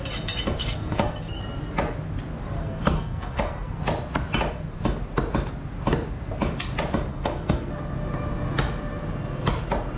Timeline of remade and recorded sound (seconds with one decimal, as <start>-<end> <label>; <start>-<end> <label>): 0.0-0.6 recorded; 0.6-1.4 remade; 1.4-2.6 recorded; 2.6-3.8 remade; 3.8-7.1 recorded; 7.1-7.7 remade; 7.7-10.0 recorded